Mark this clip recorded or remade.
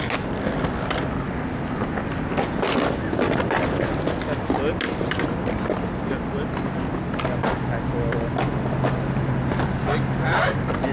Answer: recorded